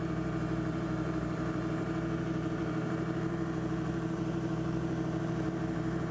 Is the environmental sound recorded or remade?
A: remade